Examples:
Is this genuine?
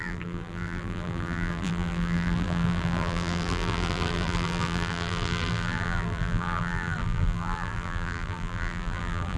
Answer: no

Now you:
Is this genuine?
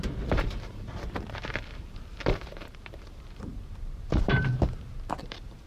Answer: no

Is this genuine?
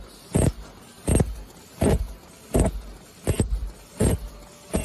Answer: yes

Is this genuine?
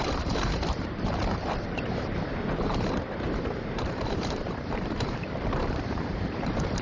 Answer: no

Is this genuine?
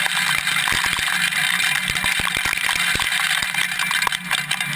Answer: yes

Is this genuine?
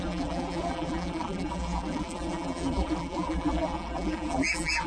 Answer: no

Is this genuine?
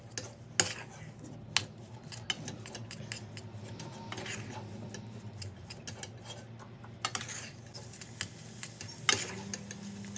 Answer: yes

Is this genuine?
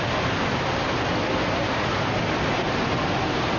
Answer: yes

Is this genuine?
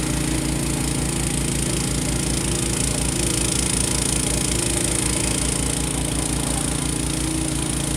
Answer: yes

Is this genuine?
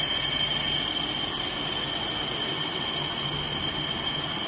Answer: yes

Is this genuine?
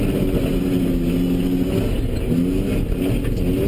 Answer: yes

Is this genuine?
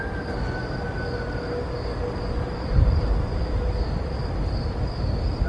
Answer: no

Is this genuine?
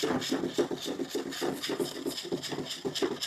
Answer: no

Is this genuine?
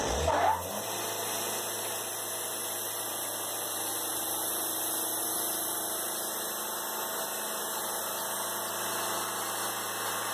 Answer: yes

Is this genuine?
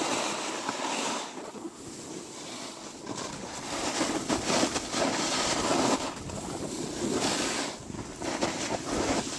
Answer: yes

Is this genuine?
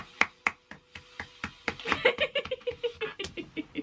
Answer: yes